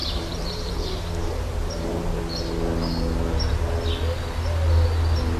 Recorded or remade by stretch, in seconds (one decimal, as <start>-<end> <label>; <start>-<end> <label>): 0.0-2.2 remade; 2.2-5.4 recorded